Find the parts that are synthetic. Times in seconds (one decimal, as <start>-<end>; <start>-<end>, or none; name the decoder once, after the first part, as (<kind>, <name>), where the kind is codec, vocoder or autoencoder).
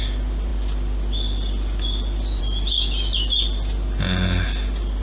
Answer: none